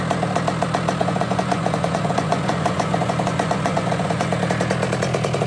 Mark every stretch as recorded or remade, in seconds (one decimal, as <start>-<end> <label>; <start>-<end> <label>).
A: 0.0-1.0 recorded; 1.0-4.3 remade; 4.3-5.5 recorded